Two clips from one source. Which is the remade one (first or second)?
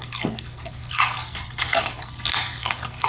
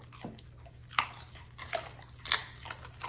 first